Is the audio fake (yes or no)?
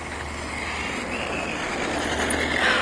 no